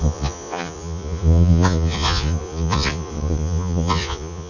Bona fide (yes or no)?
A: no